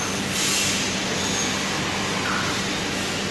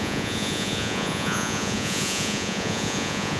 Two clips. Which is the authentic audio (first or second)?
first